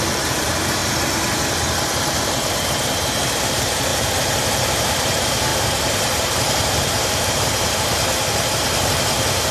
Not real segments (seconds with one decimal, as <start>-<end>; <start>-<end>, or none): 0.0-0.8; 2.7-3.9; 4.6-9.5